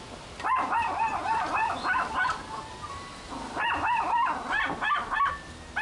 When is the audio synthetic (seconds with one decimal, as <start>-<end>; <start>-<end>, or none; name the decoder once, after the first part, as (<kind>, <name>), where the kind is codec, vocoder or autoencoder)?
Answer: none